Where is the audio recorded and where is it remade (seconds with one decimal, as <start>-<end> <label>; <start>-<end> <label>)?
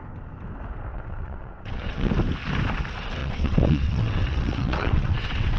0.0-0.9 recorded; 0.9-2.1 remade; 2.1-3.2 recorded; 3.2-5.6 remade